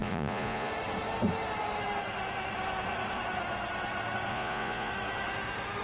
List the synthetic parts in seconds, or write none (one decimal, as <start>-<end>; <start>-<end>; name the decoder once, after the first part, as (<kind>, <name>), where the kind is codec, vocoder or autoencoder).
0.0-0.7 (vocoder, Vocos); 4.3-4.9